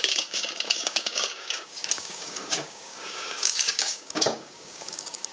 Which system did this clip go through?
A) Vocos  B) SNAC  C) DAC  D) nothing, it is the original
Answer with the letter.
C